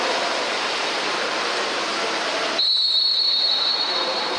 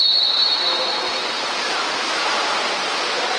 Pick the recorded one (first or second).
second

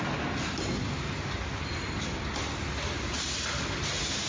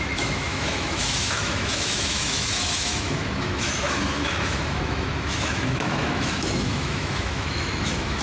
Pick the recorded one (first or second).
first